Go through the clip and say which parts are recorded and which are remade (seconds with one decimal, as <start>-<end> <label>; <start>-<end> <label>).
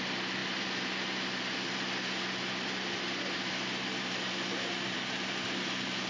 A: 0.0-6.1 recorded